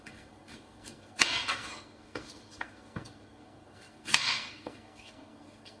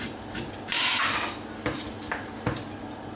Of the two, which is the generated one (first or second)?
first